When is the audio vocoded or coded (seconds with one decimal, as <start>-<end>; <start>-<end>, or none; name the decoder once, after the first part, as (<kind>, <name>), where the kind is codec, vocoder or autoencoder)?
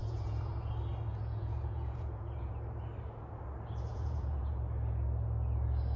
0.0-0.7 (vocoder, Vocos); 1.1-2.5; 3.9-4.6